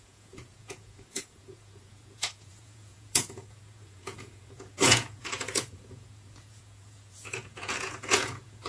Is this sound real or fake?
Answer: fake